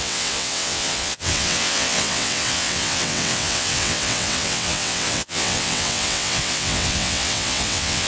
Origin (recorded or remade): remade